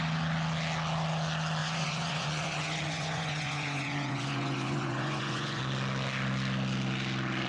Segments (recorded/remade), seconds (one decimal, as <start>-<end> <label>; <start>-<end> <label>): 0.0-1.6 recorded; 1.6-5.6 remade; 5.6-7.5 recorded